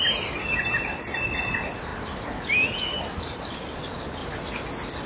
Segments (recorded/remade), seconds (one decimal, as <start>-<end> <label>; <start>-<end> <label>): 0.0-1.9 remade; 1.9-3.2 recorded; 3.2-4.2 remade; 4.2-5.1 recorded